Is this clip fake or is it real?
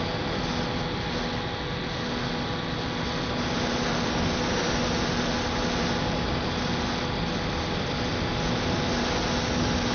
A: real